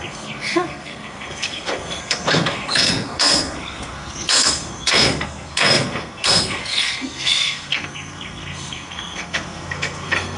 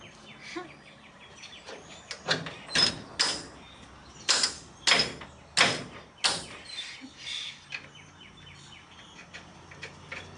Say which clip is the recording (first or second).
second